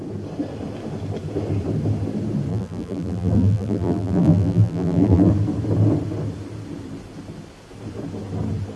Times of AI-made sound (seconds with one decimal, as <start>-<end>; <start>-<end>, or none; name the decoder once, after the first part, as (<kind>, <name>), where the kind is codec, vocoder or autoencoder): 2.5-5.3 (vocoder, BigVGAN v2)

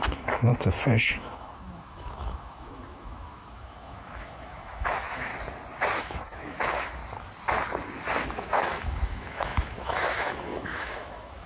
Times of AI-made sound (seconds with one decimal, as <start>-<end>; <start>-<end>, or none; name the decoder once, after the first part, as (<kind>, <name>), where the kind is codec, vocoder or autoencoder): 0.0-0.5 (autoencoder, DAC-VAE); 1.1-5.3; 6.0-7.0; 8.3-11.5

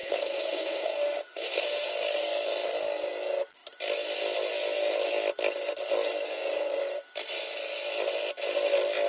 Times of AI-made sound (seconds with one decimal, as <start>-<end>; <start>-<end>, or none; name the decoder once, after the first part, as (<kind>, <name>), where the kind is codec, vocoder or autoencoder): 0.0-1.9 (autoencoder, DAC-VAE)